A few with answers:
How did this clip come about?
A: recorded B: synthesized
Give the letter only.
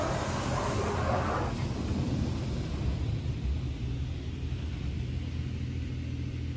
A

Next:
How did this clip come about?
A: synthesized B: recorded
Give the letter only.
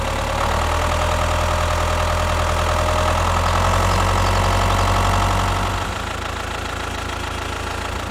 B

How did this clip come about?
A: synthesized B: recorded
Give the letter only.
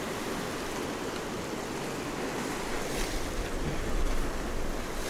B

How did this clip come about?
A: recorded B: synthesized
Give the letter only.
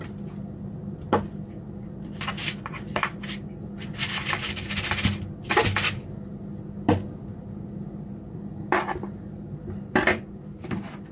A